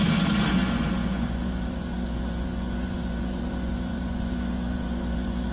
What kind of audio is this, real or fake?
fake